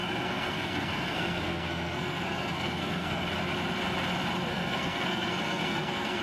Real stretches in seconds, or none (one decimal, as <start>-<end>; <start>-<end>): 3.3-4.5